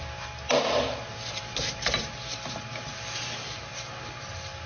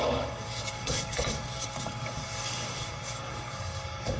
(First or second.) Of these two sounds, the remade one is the second